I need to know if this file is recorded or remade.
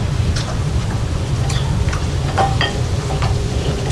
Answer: remade